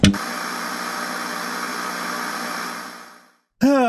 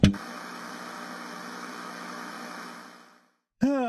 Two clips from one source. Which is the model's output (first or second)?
second